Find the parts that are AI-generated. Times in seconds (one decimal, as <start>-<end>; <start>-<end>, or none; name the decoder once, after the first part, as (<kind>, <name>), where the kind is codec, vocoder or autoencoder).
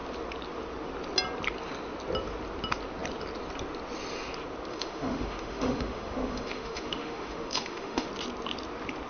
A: 4.7-8.1 (autoencoder, DAC-VAE)